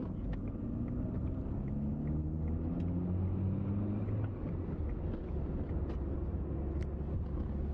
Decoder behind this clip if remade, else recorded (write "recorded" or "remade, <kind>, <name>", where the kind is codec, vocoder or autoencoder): recorded